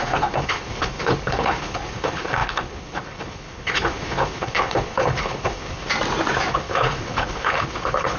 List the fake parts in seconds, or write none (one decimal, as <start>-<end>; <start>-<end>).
0.0-5.9; 6.5-8.2